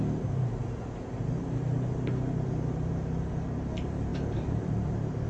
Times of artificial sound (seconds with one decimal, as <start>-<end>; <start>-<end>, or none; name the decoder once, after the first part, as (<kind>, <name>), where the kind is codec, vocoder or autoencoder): none